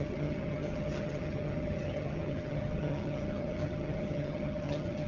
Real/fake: fake